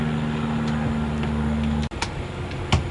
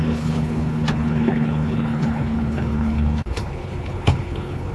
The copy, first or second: second